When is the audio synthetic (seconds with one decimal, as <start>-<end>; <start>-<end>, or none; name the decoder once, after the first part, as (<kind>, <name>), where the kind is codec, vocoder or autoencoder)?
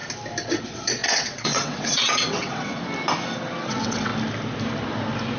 0.6-2.7 (vocoder, WaveNeXt); 3.6-4.1